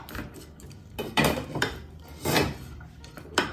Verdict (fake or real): real